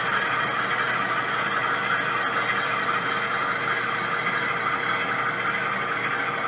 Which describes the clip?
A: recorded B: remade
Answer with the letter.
A